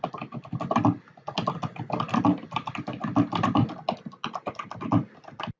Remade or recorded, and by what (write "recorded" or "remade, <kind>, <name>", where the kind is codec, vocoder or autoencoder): recorded